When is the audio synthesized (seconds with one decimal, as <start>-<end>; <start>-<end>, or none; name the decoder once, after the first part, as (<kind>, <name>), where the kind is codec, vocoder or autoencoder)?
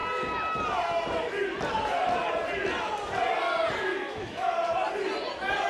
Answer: 3.9-4.5 (autoencoder, DAC-VAE)